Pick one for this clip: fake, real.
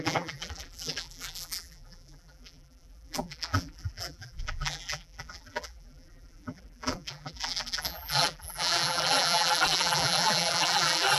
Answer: fake